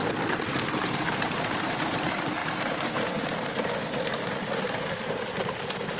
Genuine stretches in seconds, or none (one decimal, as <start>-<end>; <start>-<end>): 0.0-0.7; 2.4-4.6